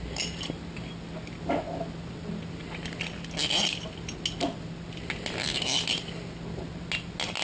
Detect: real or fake real